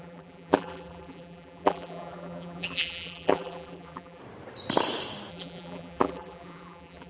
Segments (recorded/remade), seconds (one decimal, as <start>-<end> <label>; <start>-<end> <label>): 0.0-4.2 remade; 4.2-5.3 recorded; 5.3-7.1 remade